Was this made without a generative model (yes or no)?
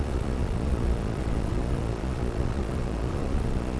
no